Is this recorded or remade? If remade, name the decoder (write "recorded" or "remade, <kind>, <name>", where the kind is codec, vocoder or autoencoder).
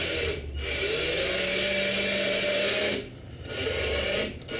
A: recorded